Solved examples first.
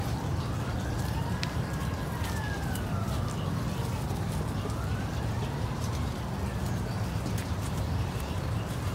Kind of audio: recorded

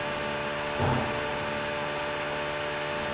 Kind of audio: recorded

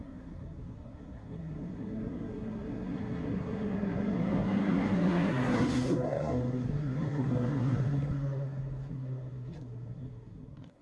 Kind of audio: remade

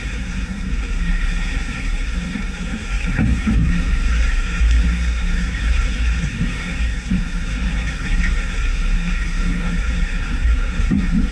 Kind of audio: remade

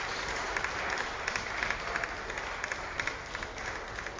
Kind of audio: recorded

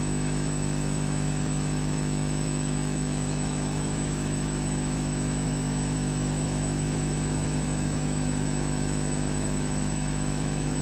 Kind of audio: remade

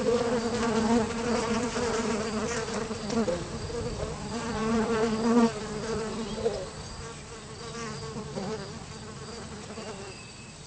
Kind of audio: remade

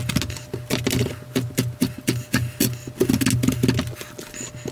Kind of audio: recorded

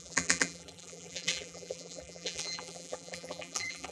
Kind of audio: remade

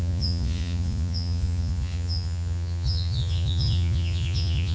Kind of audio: remade